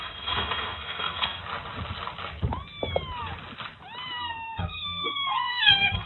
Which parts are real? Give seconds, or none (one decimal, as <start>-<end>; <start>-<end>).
1.4-4.2